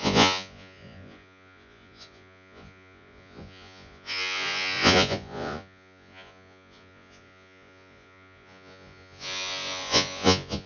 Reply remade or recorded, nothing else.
remade